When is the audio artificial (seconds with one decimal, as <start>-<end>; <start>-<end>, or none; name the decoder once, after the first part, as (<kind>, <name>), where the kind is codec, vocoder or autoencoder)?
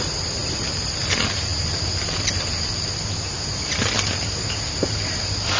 none